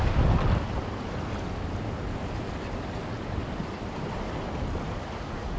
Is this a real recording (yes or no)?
yes